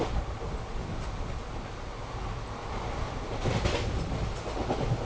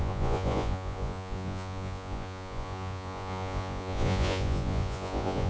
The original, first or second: first